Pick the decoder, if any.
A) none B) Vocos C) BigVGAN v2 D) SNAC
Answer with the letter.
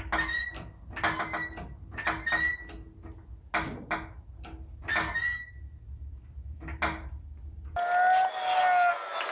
A